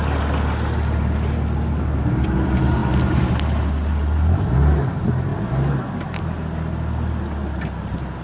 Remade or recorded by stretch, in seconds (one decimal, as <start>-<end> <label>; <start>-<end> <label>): 0.0-8.2 recorded